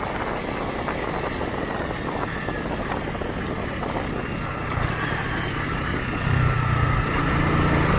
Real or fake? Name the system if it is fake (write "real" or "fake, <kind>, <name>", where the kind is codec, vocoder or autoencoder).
real